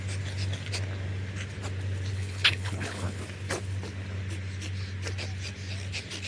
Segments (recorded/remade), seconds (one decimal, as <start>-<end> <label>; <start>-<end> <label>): 0.0-2.1 recorded; 2.1-3.2 remade; 3.2-6.3 recorded

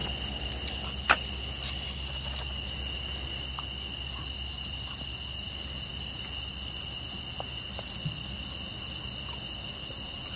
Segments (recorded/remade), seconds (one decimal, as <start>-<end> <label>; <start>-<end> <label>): 0.0-10.4 recorded

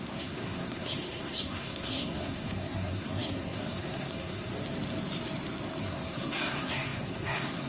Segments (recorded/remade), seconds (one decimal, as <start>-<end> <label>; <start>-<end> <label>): 0.0-4.5 remade; 4.5-5.8 recorded; 5.8-7.7 remade

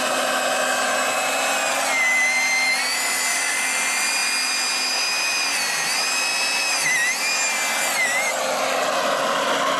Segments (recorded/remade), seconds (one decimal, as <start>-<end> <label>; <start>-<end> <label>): 0.0-9.8 recorded

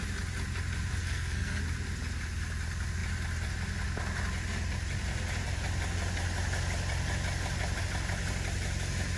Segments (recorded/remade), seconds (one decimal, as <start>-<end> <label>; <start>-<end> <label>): 0.0-1.0 recorded; 1.0-1.6 remade; 1.6-9.2 recorded

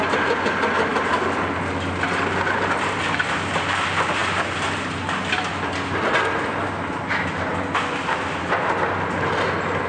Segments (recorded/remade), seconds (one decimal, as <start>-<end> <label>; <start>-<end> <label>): 0.0-0.9 recorded; 0.9-1.6 remade; 1.6-4.2 recorded; 4.2-5.5 remade; 5.5-9.9 recorded

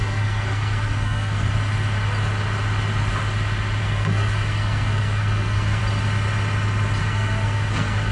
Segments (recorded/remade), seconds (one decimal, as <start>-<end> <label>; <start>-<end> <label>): 0.0-1.5 remade; 1.5-3.8 recorded; 3.8-5.8 remade; 5.8-7.0 recorded; 7.0-8.1 remade

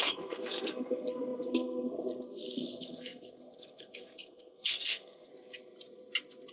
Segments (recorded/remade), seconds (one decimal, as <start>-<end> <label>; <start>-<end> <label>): 0.0-5.3 remade; 5.3-6.5 recorded